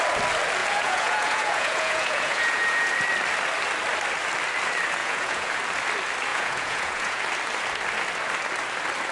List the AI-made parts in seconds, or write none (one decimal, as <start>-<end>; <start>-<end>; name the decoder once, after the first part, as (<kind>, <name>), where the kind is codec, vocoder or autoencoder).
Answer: 0.6-2.9 (vocoder, Vocos); 5.0-5.6; 6.3-7.2